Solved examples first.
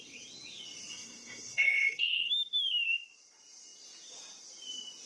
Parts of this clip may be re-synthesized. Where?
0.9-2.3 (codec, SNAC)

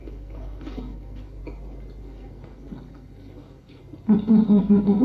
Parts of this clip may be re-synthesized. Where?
0.0-1.4 (codec, SNAC); 2.0-3.8; 4.6-5.0

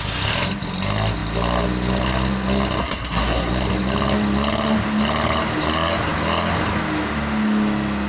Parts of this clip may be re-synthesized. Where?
2.8-3.5 (codec, SNAC)

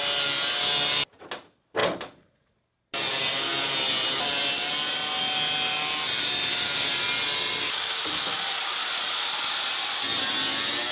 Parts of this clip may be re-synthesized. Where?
none

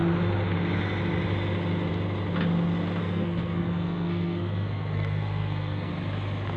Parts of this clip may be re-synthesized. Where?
3.0-5.9 (codec, SNAC)

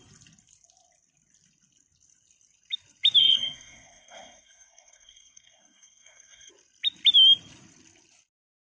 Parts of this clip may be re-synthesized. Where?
3.2-6.5 (codec, SNAC)

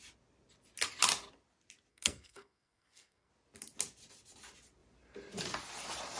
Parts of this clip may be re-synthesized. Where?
1.9-3.3 (codec, SNAC)

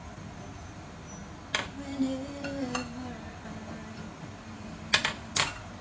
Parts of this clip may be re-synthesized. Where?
none